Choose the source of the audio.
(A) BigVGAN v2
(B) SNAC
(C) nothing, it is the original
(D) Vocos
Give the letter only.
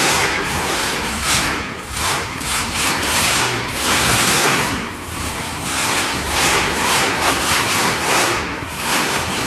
B